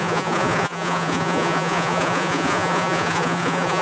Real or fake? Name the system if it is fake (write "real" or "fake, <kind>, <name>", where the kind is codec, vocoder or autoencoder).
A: fake, vocoder, Vocos